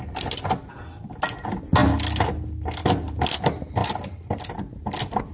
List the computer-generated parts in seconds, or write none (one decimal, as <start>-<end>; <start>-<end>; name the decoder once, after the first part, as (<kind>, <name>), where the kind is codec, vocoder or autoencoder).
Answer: 3.8-4.6 (vocoder, BigVGAN v2)